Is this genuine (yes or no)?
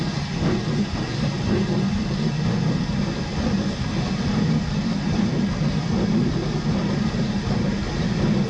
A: yes